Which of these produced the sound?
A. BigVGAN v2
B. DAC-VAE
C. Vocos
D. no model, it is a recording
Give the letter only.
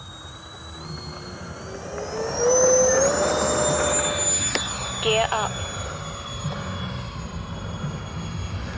D